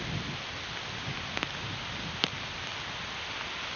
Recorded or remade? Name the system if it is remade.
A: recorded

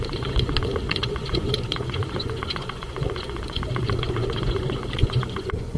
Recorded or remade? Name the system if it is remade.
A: remade, vocoder, Vocos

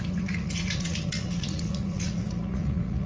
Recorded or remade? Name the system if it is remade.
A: remade, vocoder, Vocos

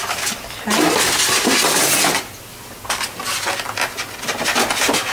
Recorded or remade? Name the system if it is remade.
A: recorded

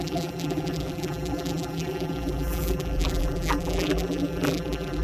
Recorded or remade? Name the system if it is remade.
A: remade, vocoder, BigVGAN v2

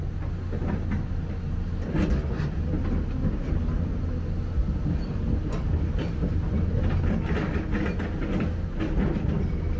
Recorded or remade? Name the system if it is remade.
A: recorded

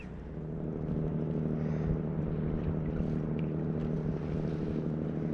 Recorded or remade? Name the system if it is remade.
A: recorded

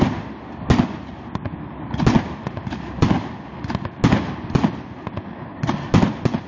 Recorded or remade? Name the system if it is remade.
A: recorded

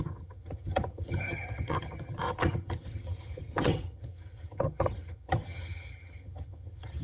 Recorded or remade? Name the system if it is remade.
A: remade, vocoder, HiFi-GAN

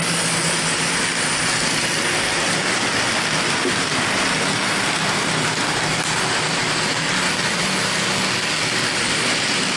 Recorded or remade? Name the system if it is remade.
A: recorded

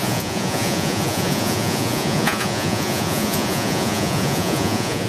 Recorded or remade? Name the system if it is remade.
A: remade, vocoder, Vocos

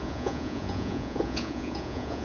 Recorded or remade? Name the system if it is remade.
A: remade, vocoder, Vocos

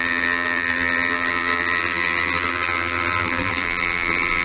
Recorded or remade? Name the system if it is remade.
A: remade, vocoder, BigVGAN v2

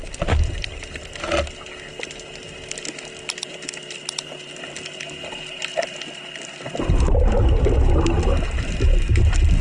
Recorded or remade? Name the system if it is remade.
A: recorded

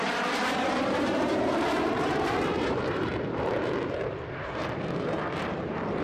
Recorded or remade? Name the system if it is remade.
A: remade, vocoder, BigVGAN v2